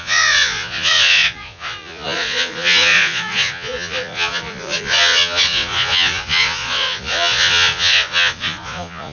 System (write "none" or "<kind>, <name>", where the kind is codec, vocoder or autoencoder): vocoder, Vocos